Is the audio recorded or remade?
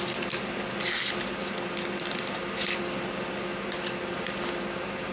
recorded